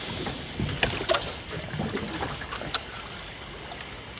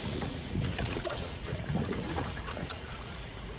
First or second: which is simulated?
second